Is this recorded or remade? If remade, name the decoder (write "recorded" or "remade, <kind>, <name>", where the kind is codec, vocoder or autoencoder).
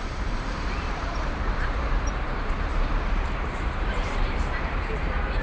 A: remade, vocoder, BigVGAN v2